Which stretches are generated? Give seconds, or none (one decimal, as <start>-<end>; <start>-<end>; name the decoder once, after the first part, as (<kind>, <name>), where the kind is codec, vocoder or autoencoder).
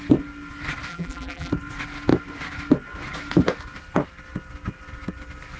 0.9-1.5 (vocoder, BigVGAN v2)